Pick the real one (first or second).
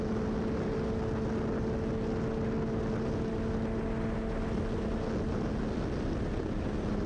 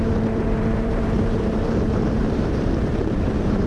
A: first